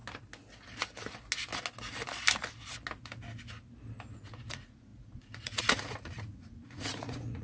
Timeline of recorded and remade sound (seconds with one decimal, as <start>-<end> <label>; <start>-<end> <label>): 0.0-4.1 recorded; 4.1-7.4 remade